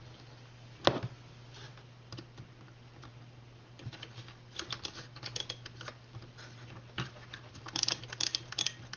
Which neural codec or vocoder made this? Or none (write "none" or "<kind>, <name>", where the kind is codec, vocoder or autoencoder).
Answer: none